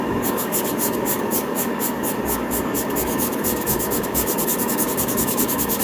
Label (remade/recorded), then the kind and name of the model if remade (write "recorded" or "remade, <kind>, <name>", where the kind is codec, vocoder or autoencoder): remade, codec, DAC